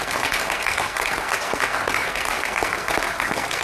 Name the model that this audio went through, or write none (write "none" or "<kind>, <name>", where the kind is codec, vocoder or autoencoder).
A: codec, SNAC